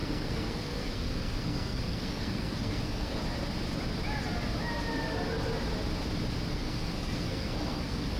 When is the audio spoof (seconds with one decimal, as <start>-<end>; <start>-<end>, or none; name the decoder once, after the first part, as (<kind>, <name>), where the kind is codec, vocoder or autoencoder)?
0.0-3.2 (codec, SNAC); 6.5-8.2